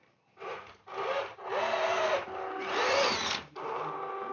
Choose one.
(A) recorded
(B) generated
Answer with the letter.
A